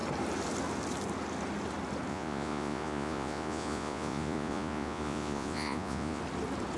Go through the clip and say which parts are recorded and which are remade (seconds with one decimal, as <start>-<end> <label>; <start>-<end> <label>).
0.0-2.1 recorded; 2.1-6.2 remade; 6.2-6.8 recorded

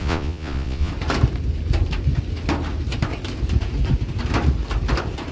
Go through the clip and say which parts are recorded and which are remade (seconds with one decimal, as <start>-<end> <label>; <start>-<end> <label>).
0.0-0.9 remade; 0.9-5.3 recorded

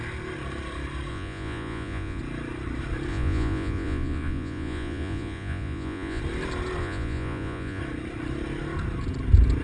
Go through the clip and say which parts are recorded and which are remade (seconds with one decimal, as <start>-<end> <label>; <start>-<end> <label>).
0.0-1.1 recorded; 1.1-2.2 remade; 2.2-3.1 recorded; 3.1-6.2 remade; 6.2-6.8 recorded; 6.8-7.8 remade; 7.8-9.6 recorded

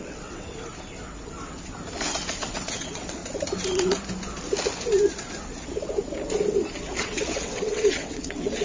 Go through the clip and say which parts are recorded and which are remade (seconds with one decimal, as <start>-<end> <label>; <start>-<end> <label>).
0.0-0.7 remade; 0.7-2.4 recorded; 2.4-3.2 remade; 3.2-7.0 recorded; 7.0-8.6 remade

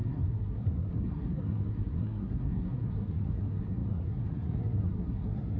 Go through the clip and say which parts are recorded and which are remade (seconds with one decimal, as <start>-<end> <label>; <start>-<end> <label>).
0.0-5.6 remade